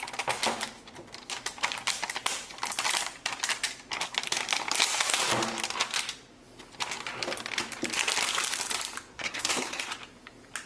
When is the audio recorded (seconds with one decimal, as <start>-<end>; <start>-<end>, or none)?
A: 0.0-9.1; 9.8-10.7